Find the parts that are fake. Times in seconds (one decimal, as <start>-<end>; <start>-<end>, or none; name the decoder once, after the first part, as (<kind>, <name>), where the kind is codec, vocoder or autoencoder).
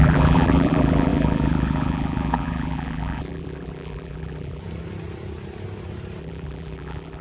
0.0-4.6 (vocoder, BigVGAN v2); 6.2-7.2